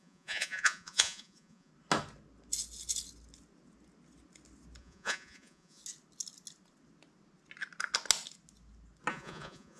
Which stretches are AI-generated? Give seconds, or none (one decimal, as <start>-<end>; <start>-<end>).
0.0-1.7; 4.8-5.8; 9.1-9.8

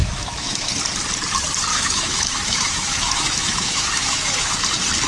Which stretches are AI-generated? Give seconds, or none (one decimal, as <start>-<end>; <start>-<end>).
0.0-0.7; 1.7-4.6

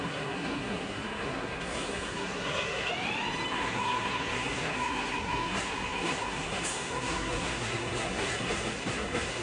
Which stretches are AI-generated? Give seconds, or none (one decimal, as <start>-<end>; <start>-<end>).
0.0-2.9; 3.5-9.4

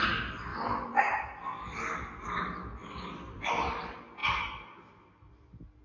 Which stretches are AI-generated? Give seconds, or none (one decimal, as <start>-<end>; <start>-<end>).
none